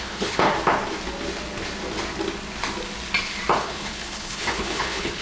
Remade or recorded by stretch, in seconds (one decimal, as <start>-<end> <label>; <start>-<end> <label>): 0.0-0.5 remade; 0.5-3.6 recorded; 3.6-5.2 remade